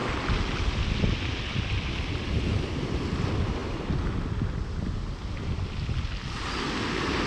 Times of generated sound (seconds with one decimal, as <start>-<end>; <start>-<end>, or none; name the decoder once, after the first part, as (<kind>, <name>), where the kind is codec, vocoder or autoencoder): none